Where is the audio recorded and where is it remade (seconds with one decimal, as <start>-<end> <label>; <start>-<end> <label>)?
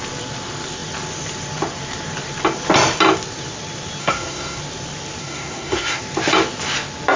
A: 0.0-4.0 recorded; 4.0-4.6 remade; 4.6-5.2 recorded; 5.2-6.0 remade; 6.0-7.2 recorded